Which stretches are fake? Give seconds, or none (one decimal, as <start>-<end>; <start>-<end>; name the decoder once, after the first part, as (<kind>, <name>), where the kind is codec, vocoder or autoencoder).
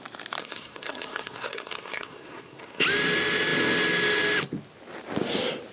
0.4-2.8 (codec, SNAC)